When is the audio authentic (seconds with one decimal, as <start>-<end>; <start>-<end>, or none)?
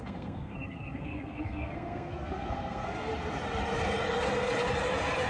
3.1-5.3